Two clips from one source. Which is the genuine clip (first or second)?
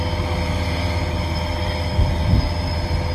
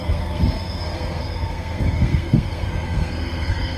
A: first